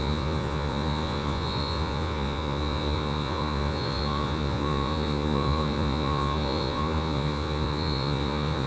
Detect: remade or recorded remade